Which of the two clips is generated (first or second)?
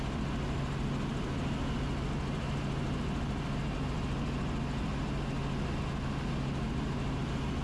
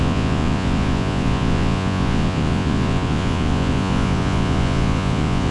second